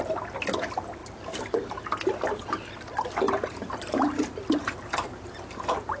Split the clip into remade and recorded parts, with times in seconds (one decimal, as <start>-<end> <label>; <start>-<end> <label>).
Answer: 0.0-6.0 recorded